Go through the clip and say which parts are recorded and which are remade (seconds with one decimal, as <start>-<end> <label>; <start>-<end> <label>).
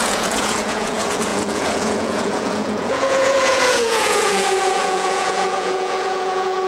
0.0-6.7 remade